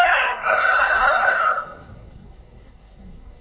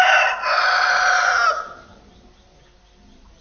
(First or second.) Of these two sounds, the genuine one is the second